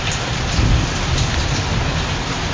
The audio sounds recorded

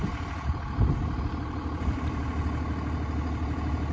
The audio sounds recorded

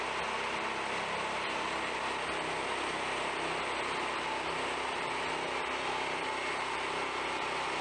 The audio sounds recorded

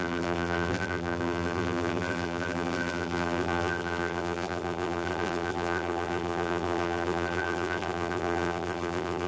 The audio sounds remade